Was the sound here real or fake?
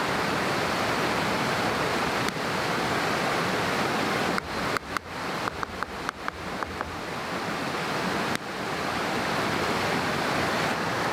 real